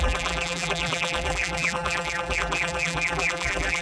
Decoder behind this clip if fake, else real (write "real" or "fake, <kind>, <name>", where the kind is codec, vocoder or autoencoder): fake, vocoder, BigVGAN v2